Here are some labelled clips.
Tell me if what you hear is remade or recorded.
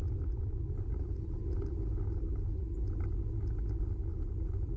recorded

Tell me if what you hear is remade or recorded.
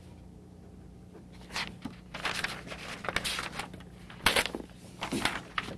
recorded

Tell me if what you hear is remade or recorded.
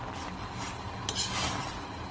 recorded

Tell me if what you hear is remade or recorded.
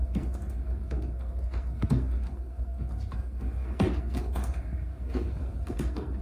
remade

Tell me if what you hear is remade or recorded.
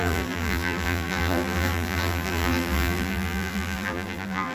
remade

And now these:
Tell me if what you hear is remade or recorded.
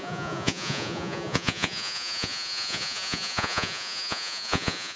remade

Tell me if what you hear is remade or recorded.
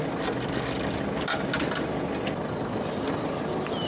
recorded